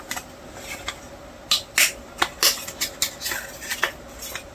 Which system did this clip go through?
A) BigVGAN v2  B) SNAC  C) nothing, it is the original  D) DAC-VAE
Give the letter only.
C